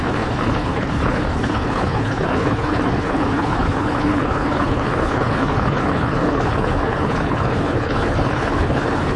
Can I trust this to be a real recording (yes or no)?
no